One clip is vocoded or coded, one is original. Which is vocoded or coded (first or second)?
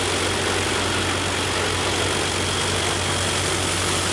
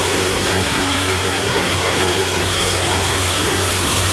second